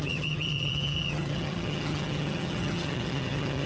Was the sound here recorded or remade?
remade